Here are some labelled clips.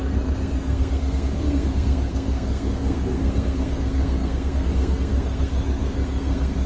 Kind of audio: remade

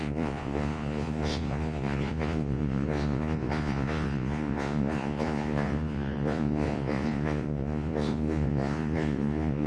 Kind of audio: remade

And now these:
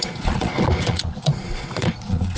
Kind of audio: remade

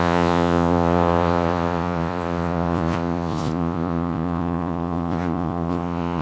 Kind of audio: remade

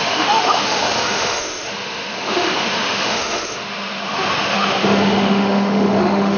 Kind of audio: remade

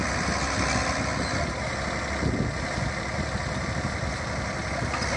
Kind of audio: recorded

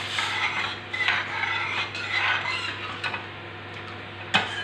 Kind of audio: recorded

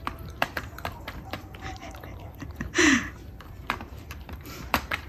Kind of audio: remade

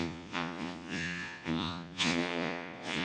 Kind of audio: remade